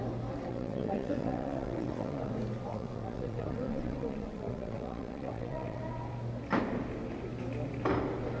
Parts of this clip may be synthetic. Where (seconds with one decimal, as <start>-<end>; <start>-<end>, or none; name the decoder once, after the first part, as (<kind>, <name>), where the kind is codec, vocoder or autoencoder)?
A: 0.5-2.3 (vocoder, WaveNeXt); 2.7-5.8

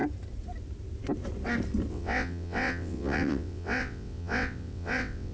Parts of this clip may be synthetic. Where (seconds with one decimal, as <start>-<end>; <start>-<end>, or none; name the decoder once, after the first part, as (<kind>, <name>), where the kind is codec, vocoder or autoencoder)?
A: 1.9-5.3 (vocoder, WaveNeXt)

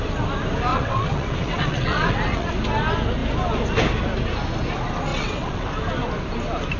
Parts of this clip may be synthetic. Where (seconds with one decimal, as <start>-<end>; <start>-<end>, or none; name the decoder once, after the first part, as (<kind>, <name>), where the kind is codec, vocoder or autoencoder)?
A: 0.7-2.5 (vocoder, WaveNeXt); 5.1-5.7